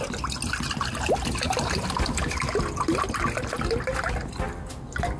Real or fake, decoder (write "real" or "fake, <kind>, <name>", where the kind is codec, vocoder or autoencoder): real